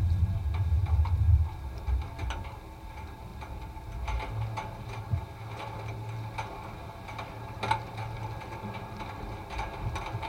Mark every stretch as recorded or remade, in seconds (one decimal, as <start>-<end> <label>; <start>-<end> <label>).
0.0-10.3 recorded

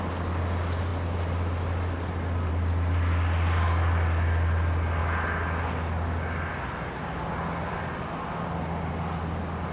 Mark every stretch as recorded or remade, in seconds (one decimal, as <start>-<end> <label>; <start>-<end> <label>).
0.0-9.7 recorded

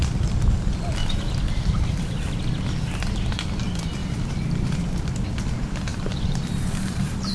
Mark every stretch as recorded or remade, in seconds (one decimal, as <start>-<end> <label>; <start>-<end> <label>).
0.0-1.0 recorded; 1.0-2.2 remade; 2.2-4.0 recorded; 4.0-4.8 remade; 4.8-5.9 recorded; 5.9-7.3 remade

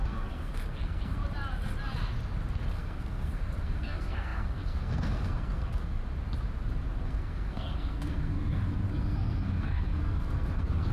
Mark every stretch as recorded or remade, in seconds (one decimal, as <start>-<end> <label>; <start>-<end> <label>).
0.0-1.2 remade; 1.2-2.7 recorded; 2.7-6.0 remade; 6.0-7.0 recorded; 7.0-10.9 remade

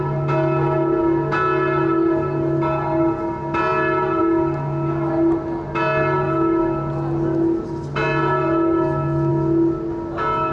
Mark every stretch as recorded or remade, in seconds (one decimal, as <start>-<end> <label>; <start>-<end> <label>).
0.0-10.5 recorded

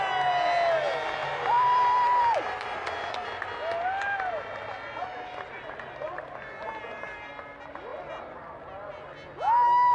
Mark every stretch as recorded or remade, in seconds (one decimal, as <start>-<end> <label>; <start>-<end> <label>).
0.0-9.9 recorded